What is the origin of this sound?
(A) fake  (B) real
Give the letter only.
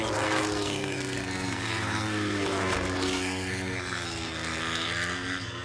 A